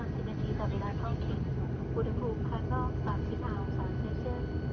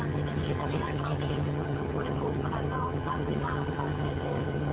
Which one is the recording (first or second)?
first